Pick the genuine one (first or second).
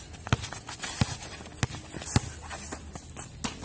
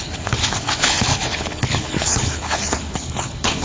first